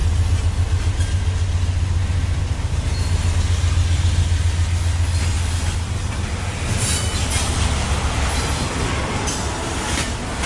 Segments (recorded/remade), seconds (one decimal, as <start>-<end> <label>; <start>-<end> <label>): 0.0-10.5 recorded